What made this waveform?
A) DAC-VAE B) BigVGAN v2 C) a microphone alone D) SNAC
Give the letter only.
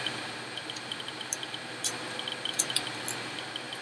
B